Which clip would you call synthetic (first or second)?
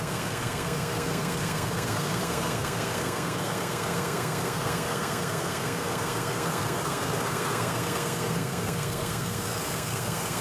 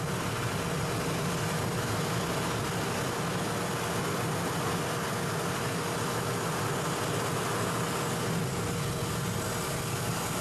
first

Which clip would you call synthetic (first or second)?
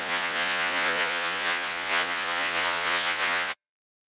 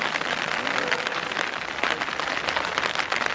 first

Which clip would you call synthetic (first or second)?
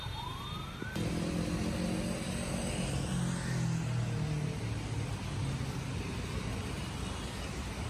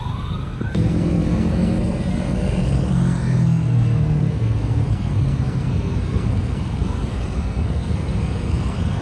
second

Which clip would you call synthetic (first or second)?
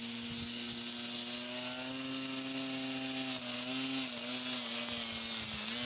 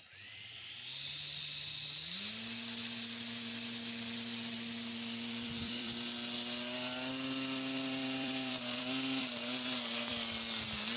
second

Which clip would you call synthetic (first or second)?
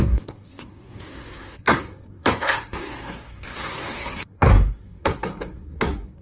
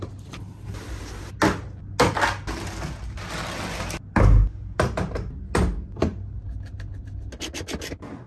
first